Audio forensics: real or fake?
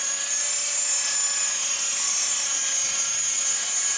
real